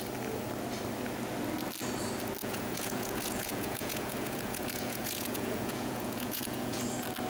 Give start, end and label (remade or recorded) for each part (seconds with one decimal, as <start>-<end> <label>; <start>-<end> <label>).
0.0-2.4 recorded; 2.4-6.8 remade; 6.8-7.3 recorded